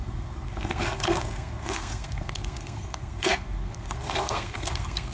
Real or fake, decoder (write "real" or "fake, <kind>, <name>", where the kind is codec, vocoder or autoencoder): fake, codec, SNAC